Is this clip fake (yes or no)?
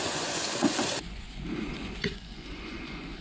yes